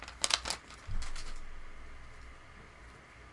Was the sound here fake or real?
real